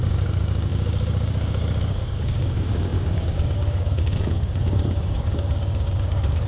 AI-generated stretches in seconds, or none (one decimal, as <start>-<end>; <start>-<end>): 0.0-6.5